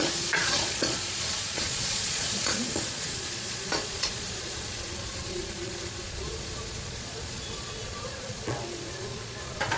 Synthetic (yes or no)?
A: yes